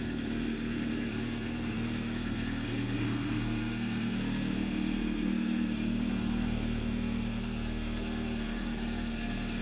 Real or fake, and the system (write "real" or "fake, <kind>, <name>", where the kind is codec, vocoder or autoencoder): fake, codec, SNAC